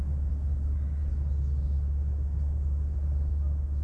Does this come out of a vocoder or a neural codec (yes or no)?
no